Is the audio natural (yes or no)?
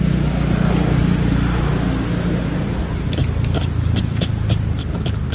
yes